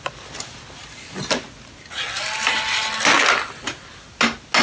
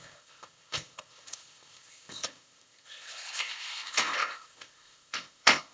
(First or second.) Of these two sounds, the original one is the first